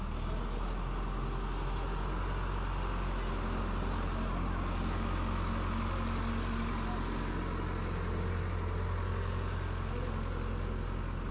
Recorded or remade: recorded